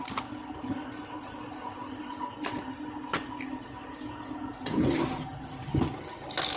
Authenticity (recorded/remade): recorded